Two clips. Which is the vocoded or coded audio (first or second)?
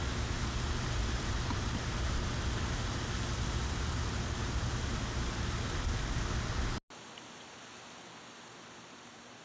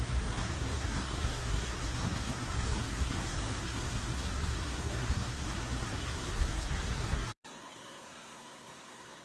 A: second